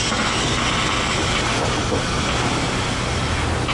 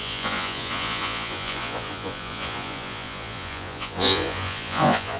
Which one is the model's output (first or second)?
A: second